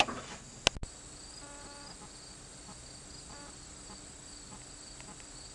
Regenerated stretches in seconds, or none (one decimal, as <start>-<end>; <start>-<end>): none